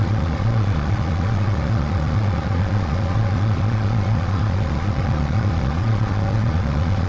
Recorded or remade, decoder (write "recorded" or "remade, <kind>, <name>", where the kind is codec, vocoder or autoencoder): remade, vocoder, Vocos